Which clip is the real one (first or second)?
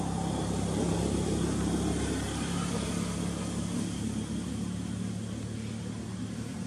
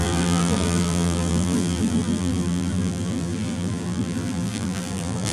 first